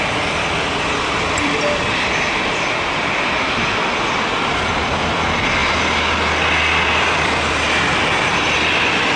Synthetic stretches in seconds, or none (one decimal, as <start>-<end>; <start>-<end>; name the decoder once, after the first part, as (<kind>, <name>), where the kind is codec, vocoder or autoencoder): 0.0-5.6 (vocoder, BigVGAN v2); 7.0-9.2